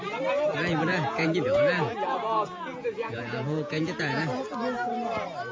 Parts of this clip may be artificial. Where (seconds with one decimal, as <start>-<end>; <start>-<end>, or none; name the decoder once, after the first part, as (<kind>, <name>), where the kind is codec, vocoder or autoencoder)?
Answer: 0.9-4.2 (vocoder, Vocos)